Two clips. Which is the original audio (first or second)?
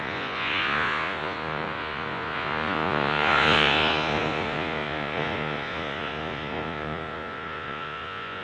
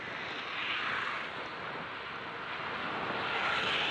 second